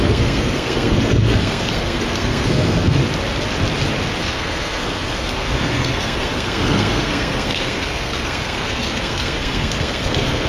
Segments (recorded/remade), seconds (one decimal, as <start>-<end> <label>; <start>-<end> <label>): 0.0-3.0 remade; 3.0-4.2 recorded; 4.2-10.5 remade